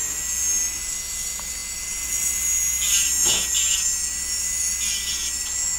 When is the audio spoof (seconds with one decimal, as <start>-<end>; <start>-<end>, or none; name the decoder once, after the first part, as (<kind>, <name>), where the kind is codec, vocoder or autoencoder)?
none